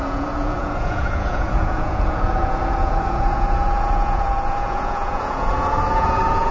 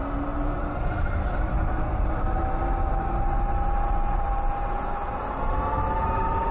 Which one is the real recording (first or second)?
second